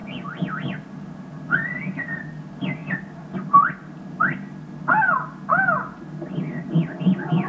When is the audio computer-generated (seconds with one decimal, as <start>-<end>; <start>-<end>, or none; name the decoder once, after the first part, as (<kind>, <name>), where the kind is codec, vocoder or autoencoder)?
none